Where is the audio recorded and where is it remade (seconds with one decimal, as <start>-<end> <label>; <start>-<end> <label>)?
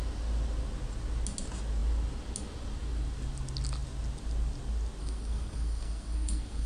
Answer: 0.0-5.0 recorded; 5.0-6.7 remade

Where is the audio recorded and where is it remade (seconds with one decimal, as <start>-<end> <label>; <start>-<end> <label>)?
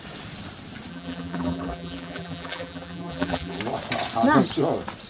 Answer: 0.0-0.9 recorded; 0.9-3.6 remade; 3.6-5.1 recorded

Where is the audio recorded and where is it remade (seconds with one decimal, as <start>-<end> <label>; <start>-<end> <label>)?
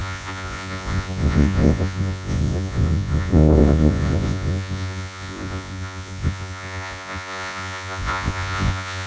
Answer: 0.0-9.1 remade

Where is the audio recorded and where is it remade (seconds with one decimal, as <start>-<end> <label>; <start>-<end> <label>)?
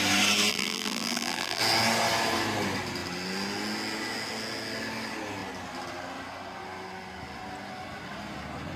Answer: 0.0-0.5 recorded; 0.5-1.6 remade; 1.6-8.8 recorded